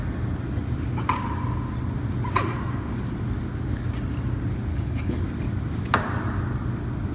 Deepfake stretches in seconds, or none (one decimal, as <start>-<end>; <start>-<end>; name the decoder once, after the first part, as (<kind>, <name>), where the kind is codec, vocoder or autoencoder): 4.7-5.2 (codec, HILCodec)